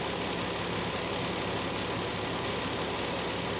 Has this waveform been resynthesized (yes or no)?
no